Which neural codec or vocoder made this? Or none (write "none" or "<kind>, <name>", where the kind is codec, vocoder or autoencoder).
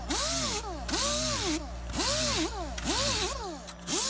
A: none